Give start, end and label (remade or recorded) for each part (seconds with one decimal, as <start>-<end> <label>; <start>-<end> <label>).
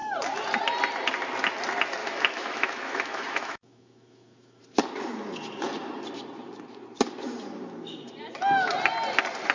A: 0.0-2.0 recorded; 2.0-4.6 remade; 4.6-9.5 recorded